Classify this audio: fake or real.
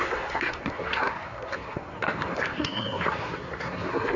fake